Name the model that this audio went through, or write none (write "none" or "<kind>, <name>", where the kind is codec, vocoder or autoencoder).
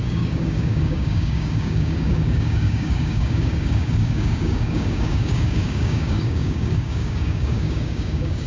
codec, DAC